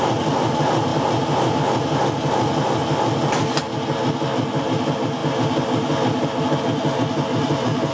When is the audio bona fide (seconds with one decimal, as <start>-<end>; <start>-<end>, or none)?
0.0-7.9